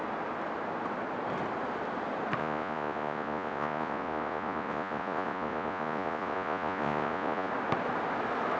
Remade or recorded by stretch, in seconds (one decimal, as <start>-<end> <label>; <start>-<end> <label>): 0.0-2.4 recorded; 2.4-7.5 remade; 7.5-8.6 recorded